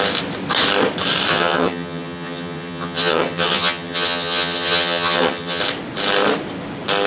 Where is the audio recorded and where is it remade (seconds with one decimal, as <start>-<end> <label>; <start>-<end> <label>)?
0.0-1.3 recorded; 1.3-5.6 remade; 5.6-7.1 recorded